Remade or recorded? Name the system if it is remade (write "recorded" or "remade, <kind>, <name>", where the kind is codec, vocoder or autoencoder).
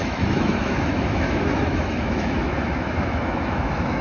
remade, autoencoder, DAC-VAE